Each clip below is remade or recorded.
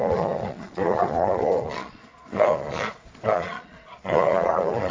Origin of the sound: remade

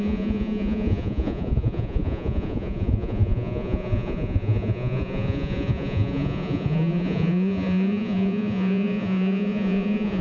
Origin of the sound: remade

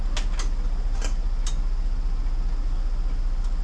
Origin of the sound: recorded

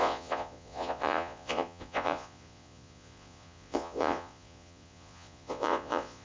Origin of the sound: remade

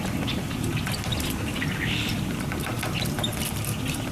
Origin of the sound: recorded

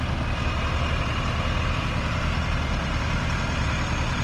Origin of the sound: recorded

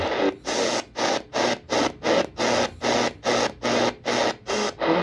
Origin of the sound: recorded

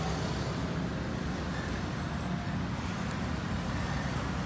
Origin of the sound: recorded